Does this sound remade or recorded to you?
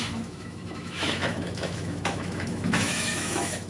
remade